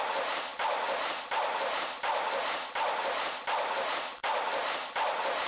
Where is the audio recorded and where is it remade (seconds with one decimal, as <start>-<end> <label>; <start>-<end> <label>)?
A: 0.0-5.5 recorded